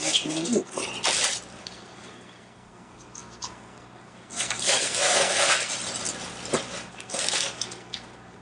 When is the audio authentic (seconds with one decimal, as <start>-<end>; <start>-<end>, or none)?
0.8-1.6; 5.7-6.9